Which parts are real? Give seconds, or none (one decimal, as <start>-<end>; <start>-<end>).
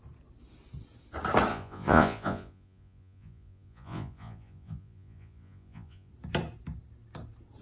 0.0-1.5; 6.1-7.6